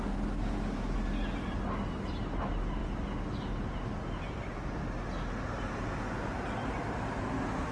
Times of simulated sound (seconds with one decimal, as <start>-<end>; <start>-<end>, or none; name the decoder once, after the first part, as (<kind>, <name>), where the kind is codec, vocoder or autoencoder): none